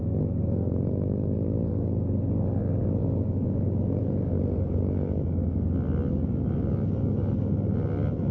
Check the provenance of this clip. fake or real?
real